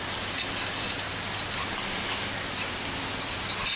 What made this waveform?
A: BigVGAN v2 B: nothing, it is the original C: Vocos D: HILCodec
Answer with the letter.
B